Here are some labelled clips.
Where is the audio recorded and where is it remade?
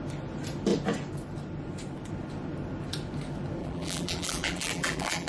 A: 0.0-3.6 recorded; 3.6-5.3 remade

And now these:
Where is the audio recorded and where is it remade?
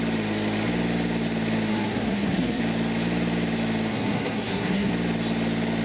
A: 0.0-1.7 recorded; 1.7-2.6 remade; 2.6-3.9 recorded; 3.9-4.9 remade; 4.9-5.8 recorded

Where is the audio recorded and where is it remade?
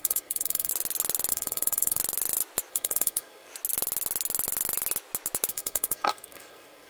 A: 0.0-0.7 remade; 0.7-1.3 recorded; 1.3-2.0 remade; 2.0-2.7 recorded; 2.7-3.5 remade; 3.5-5.5 recorded; 5.5-6.9 remade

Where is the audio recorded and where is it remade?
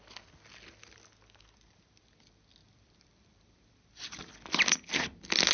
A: 0.0-2.6 recorded; 2.6-4.2 remade; 4.2-5.5 recorded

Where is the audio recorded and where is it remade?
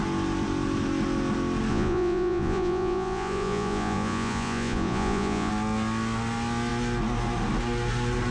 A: 0.0-1.7 recorded; 1.7-5.5 remade; 5.5-8.3 recorded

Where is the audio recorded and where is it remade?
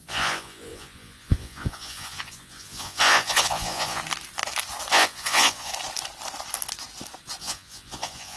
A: 0.0-4.0 remade; 4.0-4.9 recorded; 4.9-5.7 remade; 5.7-7.4 recorded; 7.4-8.4 remade